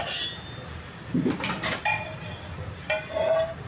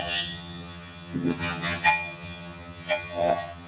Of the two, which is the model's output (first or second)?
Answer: second